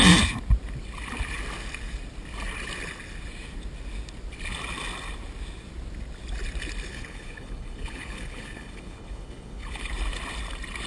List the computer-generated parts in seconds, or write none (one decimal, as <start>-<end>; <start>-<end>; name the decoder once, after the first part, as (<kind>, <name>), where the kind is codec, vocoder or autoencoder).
6.9-9.9 (codec, HILCodec)